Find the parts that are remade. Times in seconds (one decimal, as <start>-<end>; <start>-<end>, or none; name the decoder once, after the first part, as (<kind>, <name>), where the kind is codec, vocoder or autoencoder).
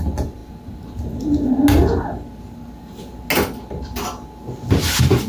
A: none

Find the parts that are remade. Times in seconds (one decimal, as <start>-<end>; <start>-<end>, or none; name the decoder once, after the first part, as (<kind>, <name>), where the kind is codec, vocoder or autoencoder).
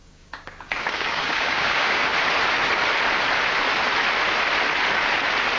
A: 0.0-2.1 (codec, DAC)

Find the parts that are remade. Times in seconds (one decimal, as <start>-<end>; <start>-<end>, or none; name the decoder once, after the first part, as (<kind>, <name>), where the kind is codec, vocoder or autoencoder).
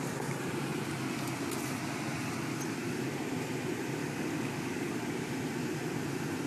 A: 4.0-5.3 (codec, DAC)